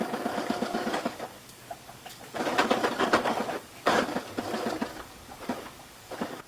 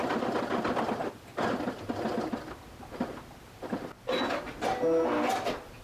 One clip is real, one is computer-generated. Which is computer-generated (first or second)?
first